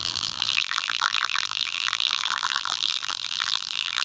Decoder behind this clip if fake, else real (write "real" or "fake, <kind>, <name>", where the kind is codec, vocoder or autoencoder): fake, vocoder, BigVGAN v2